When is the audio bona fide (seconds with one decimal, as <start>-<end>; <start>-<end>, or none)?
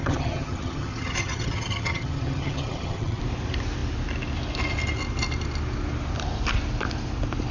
3.2-7.5